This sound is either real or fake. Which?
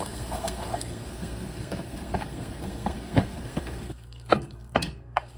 fake